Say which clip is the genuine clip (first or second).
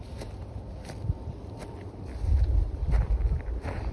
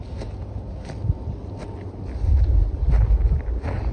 second